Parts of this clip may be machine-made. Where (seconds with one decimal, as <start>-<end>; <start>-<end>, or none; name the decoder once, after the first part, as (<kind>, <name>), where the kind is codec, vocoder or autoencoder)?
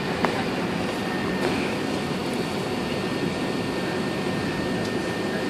none